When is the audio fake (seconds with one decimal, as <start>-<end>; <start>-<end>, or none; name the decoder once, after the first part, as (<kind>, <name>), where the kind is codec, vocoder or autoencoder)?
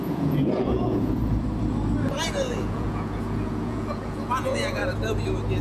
0.0-1.2 (vocoder, Vocos); 2.3-4.8